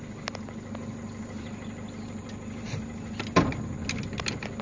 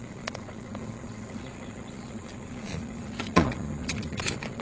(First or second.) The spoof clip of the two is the second